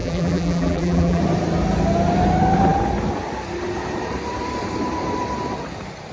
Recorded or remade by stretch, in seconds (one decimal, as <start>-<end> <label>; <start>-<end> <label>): 0.0-1.2 remade; 1.2-6.1 recorded